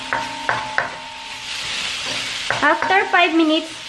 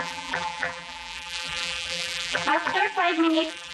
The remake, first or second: second